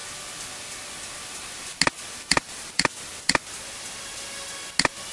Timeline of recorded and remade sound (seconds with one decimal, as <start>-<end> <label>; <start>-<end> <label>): 0.0-5.1 recorded